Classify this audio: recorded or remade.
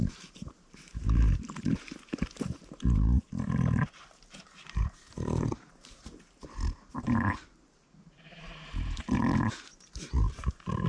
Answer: remade